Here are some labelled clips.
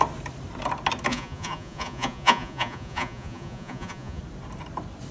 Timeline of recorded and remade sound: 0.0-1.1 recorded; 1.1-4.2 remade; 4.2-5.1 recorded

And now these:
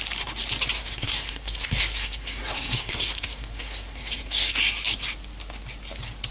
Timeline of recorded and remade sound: 0.0-0.8 recorded; 0.8-4.6 remade; 4.6-6.3 recorded

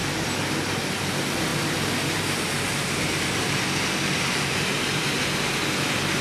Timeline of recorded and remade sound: 0.0-1.0 remade; 1.0-1.5 recorded; 1.5-4.7 remade; 4.7-6.2 recorded

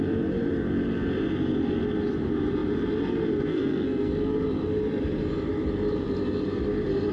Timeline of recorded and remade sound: 0.0-3.5 recorded; 3.5-4.1 remade; 4.1-7.1 recorded

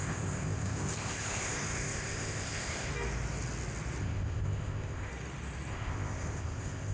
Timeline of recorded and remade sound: 0.0-2.9 remade; 2.9-4.0 recorded; 4.0-5.1 remade; 5.1-5.7 recorded; 5.7-6.9 remade